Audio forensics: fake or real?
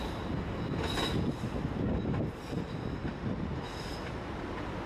real